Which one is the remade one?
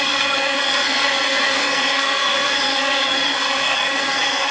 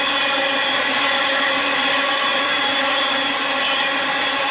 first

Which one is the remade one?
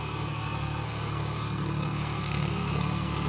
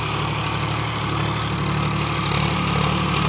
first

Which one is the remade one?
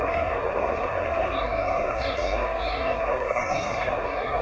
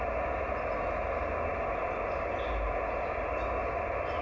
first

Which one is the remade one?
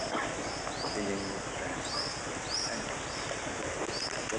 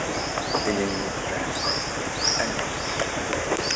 second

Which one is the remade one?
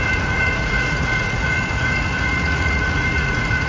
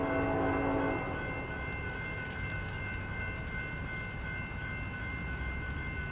first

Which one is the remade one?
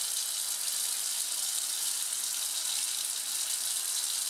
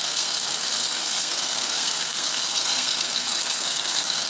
second